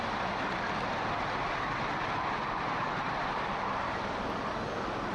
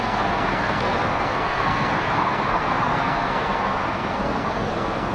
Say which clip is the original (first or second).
first